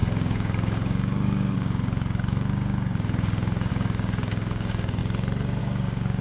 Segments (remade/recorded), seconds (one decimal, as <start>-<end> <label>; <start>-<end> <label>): 0.0-5.0 remade; 5.0-5.6 recorded; 5.6-6.2 remade

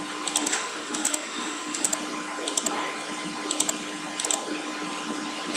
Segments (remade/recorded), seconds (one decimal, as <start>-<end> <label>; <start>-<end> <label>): 0.0-0.4 recorded; 0.4-1.9 remade; 1.9-5.6 recorded

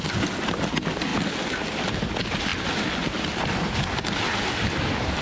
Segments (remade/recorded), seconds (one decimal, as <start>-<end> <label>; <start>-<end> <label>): 0.0-5.2 recorded

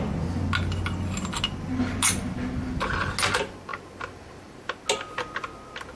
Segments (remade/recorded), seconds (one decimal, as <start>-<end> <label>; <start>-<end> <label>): 0.0-5.9 recorded